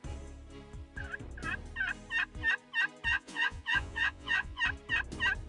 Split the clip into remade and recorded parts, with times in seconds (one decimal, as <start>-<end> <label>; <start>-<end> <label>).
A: 0.0-3.1 recorded; 3.1-4.6 remade; 4.6-5.5 recorded